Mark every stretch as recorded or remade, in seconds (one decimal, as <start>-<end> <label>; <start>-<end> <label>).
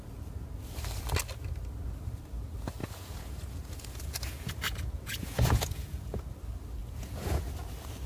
0.0-2.8 recorded; 2.8-6.2 remade; 6.2-6.8 recorded; 6.8-7.4 remade; 7.4-8.1 recorded